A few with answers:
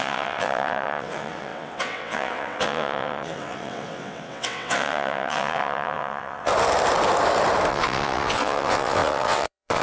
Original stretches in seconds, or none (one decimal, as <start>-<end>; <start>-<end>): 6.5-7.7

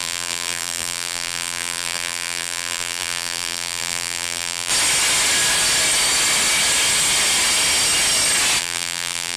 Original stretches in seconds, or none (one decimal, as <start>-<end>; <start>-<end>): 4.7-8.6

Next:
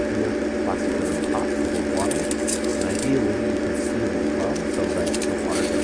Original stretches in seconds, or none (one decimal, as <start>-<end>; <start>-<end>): 0.0-5.8

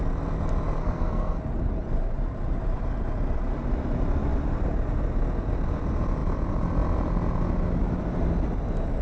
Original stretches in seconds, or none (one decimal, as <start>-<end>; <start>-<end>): 0.0-0.8; 1.4-9.0

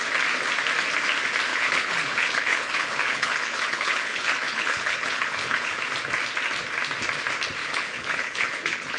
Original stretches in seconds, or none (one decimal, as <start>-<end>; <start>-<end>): 0.0-1.5; 5.8-7.6

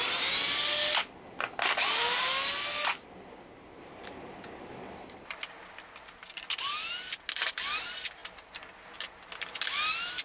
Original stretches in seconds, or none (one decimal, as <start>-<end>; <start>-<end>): 0.0-10.2

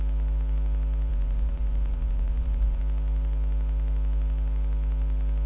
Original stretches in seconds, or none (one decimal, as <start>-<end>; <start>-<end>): 0.0-1.1; 2.8-5.5

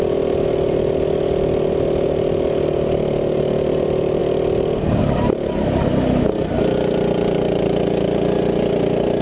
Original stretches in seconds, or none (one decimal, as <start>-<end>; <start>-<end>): 0.0-9.2